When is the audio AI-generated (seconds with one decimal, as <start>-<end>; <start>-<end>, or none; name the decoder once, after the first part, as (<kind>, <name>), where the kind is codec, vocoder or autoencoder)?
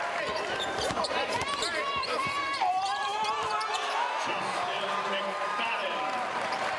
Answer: 0.0-3.1 (vocoder, BigVGAN v2); 4.5-6.8